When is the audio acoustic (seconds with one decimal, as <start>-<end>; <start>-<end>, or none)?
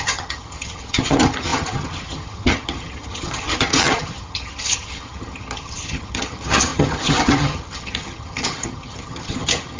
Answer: none